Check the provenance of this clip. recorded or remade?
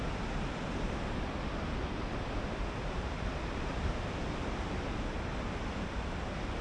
recorded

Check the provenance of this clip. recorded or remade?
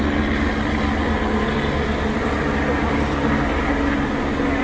recorded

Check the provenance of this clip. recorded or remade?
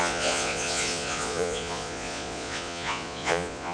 remade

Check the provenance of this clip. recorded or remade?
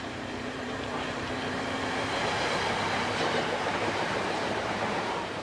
remade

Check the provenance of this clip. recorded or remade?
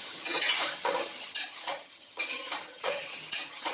remade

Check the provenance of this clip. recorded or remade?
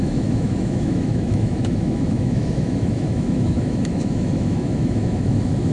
remade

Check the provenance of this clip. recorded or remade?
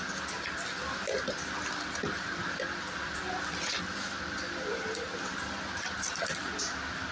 recorded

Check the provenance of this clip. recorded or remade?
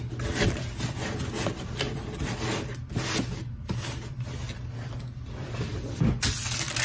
recorded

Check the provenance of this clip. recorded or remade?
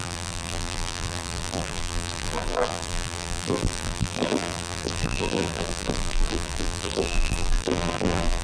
remade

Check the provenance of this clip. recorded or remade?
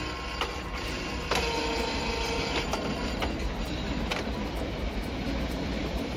recorded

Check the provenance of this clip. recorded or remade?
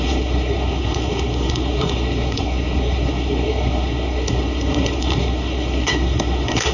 remade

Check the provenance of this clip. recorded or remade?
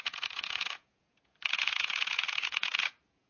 remade